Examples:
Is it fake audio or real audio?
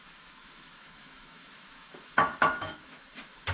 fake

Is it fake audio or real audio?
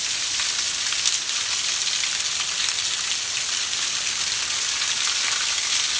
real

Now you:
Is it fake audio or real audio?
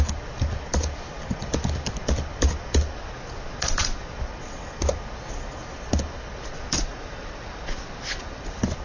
real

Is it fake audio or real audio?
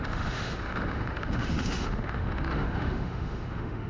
fake